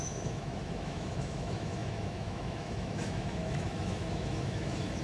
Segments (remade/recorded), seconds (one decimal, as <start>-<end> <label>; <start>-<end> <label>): 0.0-5.0 remade